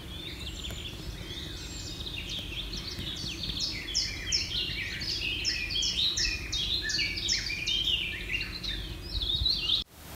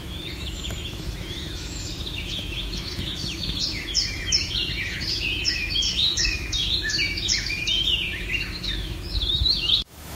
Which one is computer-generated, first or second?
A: second